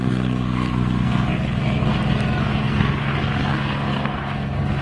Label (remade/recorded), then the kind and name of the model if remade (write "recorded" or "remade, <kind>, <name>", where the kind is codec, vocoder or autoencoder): remade, codec, SNAC